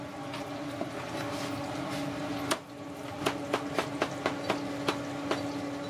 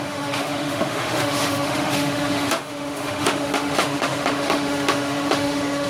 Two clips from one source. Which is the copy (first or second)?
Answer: second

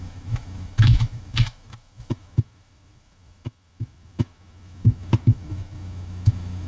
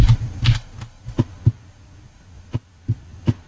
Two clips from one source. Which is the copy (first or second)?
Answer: first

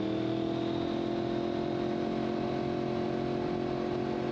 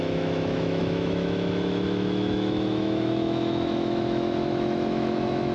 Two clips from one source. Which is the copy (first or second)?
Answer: second